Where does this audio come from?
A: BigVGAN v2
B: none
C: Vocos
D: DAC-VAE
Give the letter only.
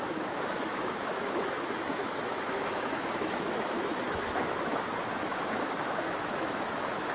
D